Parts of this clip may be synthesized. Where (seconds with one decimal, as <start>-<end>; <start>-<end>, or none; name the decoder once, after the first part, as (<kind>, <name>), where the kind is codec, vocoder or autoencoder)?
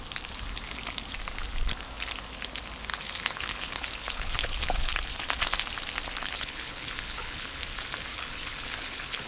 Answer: 2.9-5.1 (codec, HILCodec); 6.2-7.6; 8.1-9.3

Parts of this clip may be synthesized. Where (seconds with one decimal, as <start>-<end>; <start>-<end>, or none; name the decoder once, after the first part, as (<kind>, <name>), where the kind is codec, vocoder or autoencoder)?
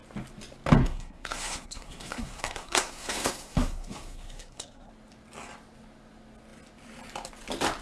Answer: 0.8-4.9 (codec, SNAC)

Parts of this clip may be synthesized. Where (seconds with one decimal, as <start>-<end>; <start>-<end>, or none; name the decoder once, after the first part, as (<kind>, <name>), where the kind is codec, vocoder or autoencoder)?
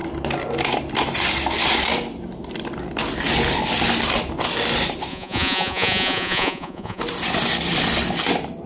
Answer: 5.1-7.0 (vocoder, Vocos)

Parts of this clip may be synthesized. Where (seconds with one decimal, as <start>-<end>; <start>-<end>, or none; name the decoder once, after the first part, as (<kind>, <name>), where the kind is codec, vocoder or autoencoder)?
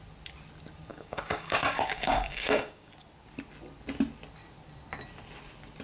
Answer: 0.9-2.9 (codec, DAC)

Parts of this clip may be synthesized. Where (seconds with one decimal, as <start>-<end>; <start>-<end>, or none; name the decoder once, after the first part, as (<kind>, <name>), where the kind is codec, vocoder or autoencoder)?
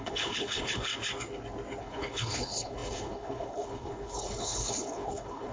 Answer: 0.0-0.9 (codec, HILCodec); 1.8-5.5